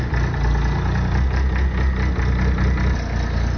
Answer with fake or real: real